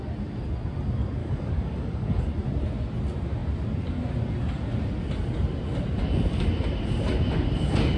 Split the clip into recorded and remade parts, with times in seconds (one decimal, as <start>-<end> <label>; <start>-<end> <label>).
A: 0.0-1.2 recorded; 1.2-2.3 remade; 2.3-8.0 recorded